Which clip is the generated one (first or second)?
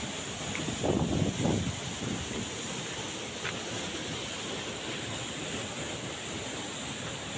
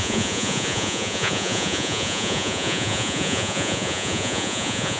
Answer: second